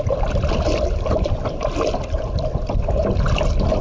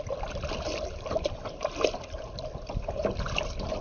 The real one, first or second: first